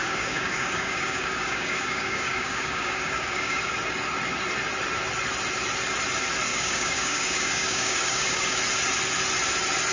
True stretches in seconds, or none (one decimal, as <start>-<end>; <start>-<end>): 3.7-6.5; 8.6-9.9

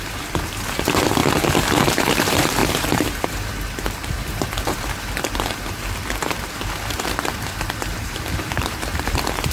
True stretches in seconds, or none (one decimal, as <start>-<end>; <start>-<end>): 1.2-1.9

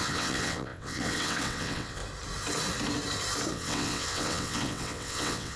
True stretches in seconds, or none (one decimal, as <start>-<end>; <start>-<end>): 2.0-3.5

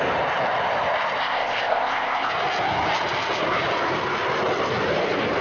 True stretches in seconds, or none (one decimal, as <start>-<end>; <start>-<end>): 0.0-1.2; 2.3-5.4

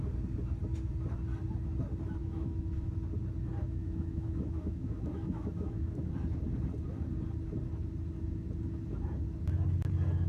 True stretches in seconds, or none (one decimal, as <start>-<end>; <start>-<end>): 0.0-2.2; 2.9-3.6; 6.1-10.3

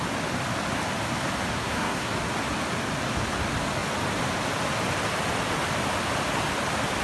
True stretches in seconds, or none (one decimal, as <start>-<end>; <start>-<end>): 0.0-1.5; 2.1-7.0

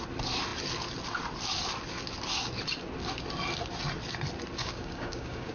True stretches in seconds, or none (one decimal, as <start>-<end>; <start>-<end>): 0.0-4.6

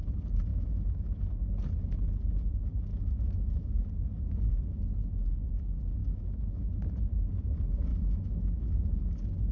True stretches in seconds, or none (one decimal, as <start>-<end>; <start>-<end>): 0.0-0.5; 1.2-2.9; 3.9-6.0; 6.7-7.9; 9.1-9.5